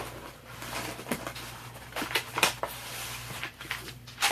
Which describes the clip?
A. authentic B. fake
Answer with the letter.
B